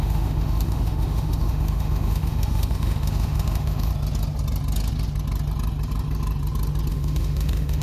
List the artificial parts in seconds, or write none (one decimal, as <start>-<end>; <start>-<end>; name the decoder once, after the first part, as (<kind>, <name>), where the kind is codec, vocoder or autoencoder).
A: 0.0-3.9 (autoencoder, DAC-VAE); 6.9-7.8